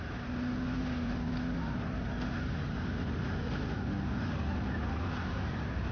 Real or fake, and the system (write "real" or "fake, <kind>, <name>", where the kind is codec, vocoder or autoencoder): real